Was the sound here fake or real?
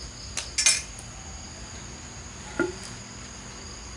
real